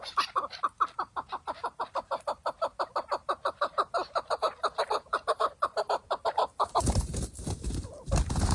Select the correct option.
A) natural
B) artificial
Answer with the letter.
B